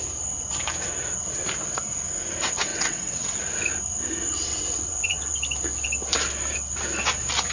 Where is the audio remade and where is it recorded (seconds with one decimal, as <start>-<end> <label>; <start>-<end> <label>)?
0.0-2.7 recorded; 2.7-3.4 remade; 3.4-4.5 recorded; 4.5-5.3 remade; 5.3-7.5 recorded

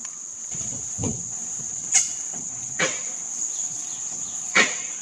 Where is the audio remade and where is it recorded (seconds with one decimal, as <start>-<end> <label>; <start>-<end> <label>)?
0.0-5.0 remade

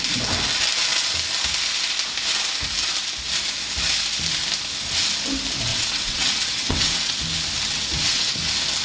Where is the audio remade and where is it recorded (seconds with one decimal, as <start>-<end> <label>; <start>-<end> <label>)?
0.0-5.7 recorded; 5.7-7.2 remade; 7.2-7.7 recorded; 7.7-8.4 remade; 8.4-8.8 recorded

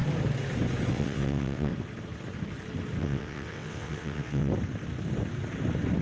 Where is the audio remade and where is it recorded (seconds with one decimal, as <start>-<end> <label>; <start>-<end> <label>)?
0.0-0.9 recorded; 0.9-1.7 remade; 1.7-3.0 recorded; 3.0-4.5 remade; 4.5-6.0 recorded

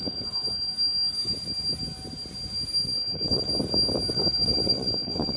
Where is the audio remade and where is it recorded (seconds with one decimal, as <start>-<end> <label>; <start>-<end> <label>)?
0.0-0.7 remade; 0.7-2.8 recorded; 2.8-3.5 remade; 3.5-4.1 recorded; 4.1-5.4 remade

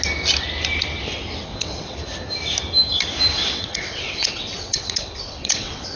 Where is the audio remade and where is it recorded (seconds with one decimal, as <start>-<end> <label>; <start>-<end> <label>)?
0.0-1.5 recorded; 1.5-2.0 remade; 2.0-3.4 recorded; 3.4-6.0 remade